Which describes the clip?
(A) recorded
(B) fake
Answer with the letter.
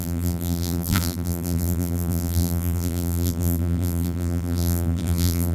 B